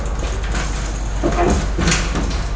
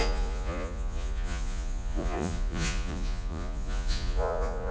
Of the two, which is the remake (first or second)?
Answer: second